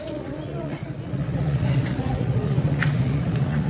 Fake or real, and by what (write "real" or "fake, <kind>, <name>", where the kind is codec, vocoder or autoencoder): fake, vocoder, Vocos